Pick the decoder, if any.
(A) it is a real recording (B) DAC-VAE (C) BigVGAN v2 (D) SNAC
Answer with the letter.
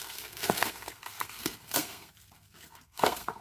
D